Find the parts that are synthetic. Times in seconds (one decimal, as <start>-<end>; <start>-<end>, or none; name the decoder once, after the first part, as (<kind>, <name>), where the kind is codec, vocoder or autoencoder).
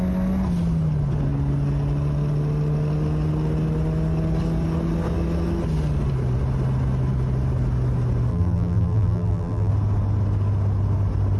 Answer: 8.3-9.7 (vocoder, BigVGAN v2)